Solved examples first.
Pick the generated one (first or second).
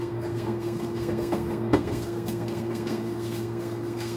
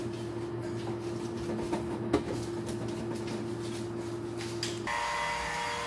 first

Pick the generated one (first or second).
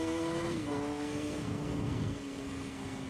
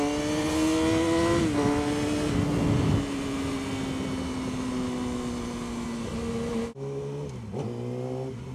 first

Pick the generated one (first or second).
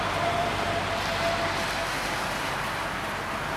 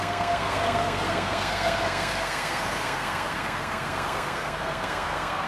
second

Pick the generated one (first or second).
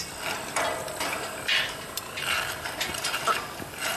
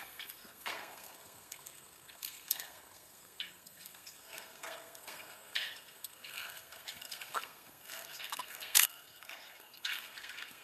second